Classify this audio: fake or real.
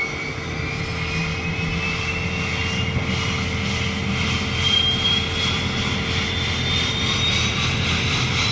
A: real